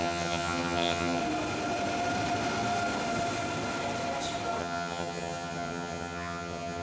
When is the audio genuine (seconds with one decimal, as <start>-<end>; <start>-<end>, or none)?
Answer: 1.2-4.6